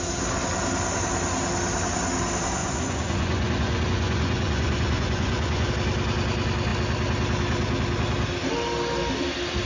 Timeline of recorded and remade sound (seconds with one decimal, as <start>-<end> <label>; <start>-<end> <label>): 0.0-2.6 recorded; 2.6-5.7 remade; 5.7-9.7 recorded